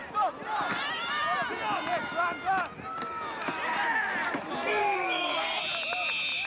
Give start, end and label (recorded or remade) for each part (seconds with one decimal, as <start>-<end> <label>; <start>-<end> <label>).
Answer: 0.0-4.8 recorded; 4.8-5.6 remade; 5.6-6.5 recorded